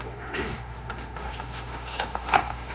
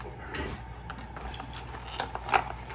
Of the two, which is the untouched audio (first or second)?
second